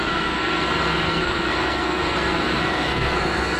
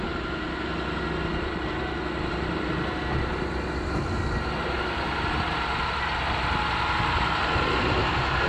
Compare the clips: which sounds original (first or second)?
second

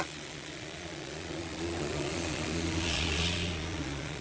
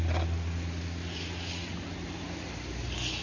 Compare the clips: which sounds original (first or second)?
second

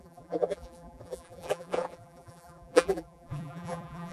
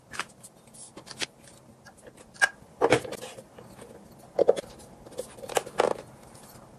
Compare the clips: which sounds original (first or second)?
second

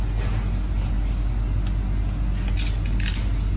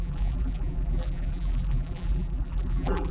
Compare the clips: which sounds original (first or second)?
first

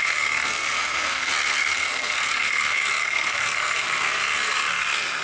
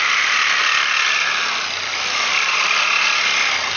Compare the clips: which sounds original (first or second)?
second